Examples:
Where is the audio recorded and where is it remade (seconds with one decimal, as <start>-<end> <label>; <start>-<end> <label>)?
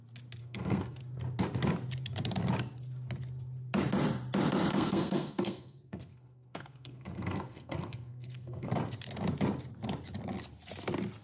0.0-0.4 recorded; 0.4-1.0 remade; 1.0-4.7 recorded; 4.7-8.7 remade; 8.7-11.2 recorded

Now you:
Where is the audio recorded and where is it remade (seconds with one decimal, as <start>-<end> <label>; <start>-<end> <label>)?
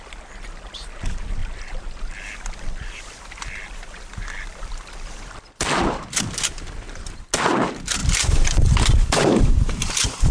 0.0-1.4 recorded; 1.4-6.2 remade; 6.2-8.0 recorded; 8.0-9.9 remade; 9.9-10.3 recorded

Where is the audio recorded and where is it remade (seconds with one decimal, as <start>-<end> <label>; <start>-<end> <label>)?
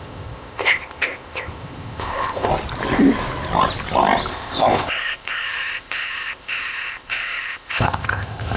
0.0-2.5 remade; 2.5-4.3 recorded; 4.3-8.6 remade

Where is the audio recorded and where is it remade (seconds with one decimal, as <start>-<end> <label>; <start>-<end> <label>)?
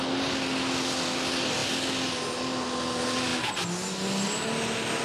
0.0-5.0 recorded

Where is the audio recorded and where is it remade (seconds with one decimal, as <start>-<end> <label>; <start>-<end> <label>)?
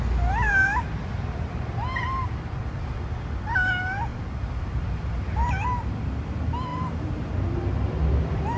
0.0-4.1 recorded; 4.1-5.1 remade; 5.1-6.7 recorded; 6.7-7.3 remade; 7.3-8.6 recorded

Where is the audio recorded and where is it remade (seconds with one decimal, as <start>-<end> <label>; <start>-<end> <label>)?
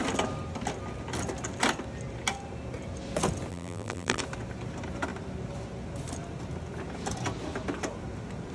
0.0-3.5 recorded; 3.5-4.2 remade; 4.2-8.5 recorded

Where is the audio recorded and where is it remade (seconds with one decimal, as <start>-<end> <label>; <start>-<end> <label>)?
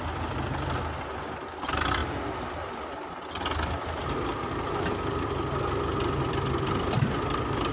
0.0-7.7 recorded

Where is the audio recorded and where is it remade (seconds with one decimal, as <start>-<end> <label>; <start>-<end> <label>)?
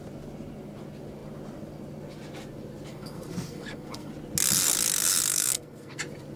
0.0-2.9 recorded; 2.9-4.1 remade; 4.1-5.3 recorded; 5.3-6.0 remade; 6.0-6.4 recorded